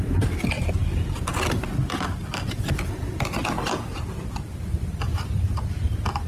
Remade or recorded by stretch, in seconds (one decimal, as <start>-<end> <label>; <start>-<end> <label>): 0.0-6.3 recorded